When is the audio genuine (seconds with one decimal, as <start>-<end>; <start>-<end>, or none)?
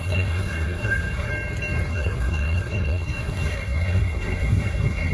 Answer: 1.3-1.9